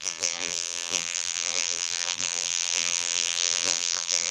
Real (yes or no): no